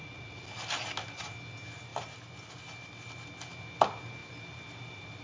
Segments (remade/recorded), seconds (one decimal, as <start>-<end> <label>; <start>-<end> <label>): 0.0-1.1 remade; 1.1-4.2 recorded; 4.2-5.2 remade